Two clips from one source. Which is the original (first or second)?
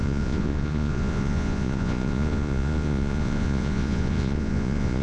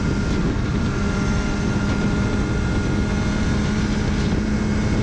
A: second